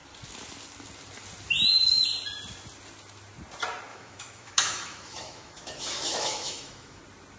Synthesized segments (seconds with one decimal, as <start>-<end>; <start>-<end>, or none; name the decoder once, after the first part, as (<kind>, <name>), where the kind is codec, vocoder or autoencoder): 3.9-7.0 (autoencoder, DAC-VAE)